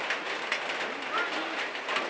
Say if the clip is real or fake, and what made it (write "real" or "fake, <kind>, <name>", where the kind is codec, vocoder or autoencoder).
real